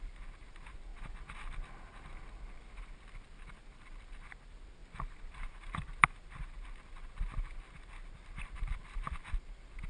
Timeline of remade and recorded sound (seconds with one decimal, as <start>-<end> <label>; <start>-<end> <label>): 0.0-0.9 remade; 0.9-3.0 recorded; 3.0-4.8 remade; 4.8-5.3 recorded; 5.3-9.9 remade

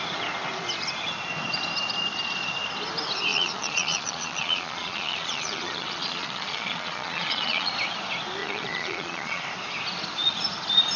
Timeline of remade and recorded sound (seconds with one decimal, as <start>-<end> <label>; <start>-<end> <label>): 0.0-3.3 recorded; 3.3-7.7 remade; 7.7-8.4 recorded; 8.4-9.4 remade; 9.4-11.0 recorded

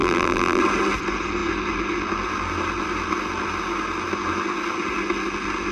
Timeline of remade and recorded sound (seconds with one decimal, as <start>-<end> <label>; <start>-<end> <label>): 0.0-0.6 remade; 0.6-5.7 recorded